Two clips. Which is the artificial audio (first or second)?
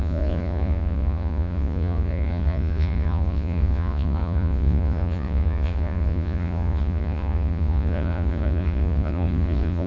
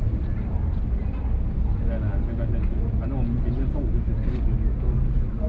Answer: first